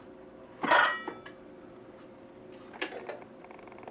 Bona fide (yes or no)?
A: yes